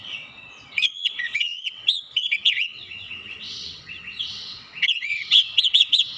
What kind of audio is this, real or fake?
fake